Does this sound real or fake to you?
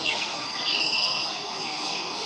fake